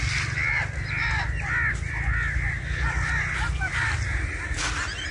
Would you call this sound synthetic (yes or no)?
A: no